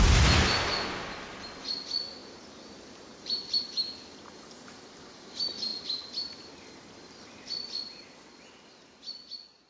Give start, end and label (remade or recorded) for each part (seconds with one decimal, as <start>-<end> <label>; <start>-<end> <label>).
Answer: 0.0-2.2 recorded; 2.2-3.7 remade; 3.7-9.7 recorded

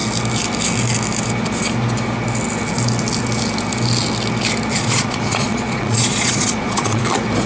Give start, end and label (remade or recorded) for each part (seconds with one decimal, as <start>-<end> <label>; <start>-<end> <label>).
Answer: 0.0-4.7 recorded; 4.7-7.0 remade; 7.0-7.5 recorded

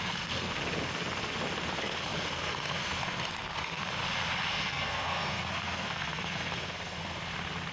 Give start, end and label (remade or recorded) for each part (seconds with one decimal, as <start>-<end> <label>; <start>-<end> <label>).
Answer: 0.0-0.5 remade; 0.5-1.7 recorded; 1.7-3.8 remade; 3.8-4.5 recorded; 4.5-7.0 remade; 7.0-7.7 recorded

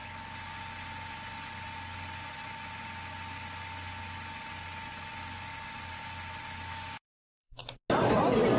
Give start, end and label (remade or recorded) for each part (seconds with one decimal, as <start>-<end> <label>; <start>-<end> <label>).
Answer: 0.0-6.7 recorded; 6.7-7.6 remade; 7.6-8.6 recorded

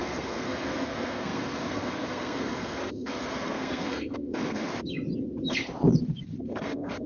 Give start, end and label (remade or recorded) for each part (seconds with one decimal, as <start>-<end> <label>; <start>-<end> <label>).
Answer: 0.0-4.7 remade; 4.7-6.4 recorded; 6.4-7.1 remade

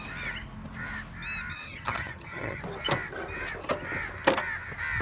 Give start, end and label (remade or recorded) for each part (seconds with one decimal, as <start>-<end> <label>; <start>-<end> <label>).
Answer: 0.0-1.5 recorded; 1.5-2.6 remade; 2.6-5.0 recorded